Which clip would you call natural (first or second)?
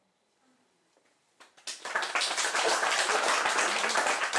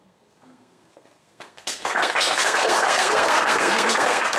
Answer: first